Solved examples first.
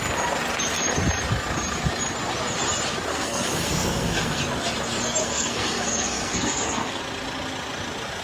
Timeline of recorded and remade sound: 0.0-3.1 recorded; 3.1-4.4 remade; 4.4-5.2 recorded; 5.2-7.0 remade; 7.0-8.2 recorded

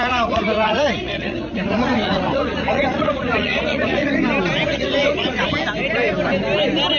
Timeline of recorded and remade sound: 0.0-4.2 remade; 4.2-4.7 recorded; 4.7-5.5 remade; 5.5-7.0 recorded

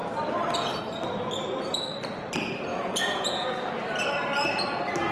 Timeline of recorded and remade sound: 0.0-2.7 recorded; 2.7-3.7 remade; 3.7-5.1 recorded

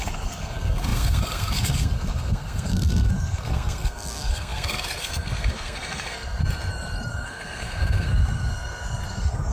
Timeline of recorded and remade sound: 0.0-6.4 remade; 6.4-7.1 recorded; 7.1-9.5 remade

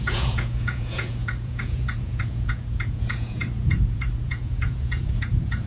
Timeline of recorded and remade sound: 0.0-5.7 remade